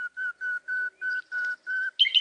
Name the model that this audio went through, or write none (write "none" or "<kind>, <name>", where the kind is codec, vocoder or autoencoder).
none